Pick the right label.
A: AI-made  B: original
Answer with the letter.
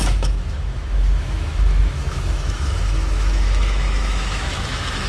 A